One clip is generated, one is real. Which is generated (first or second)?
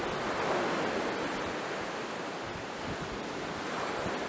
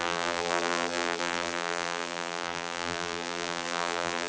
second